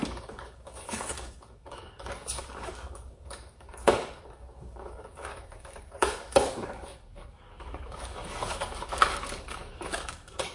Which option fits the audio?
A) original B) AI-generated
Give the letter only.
B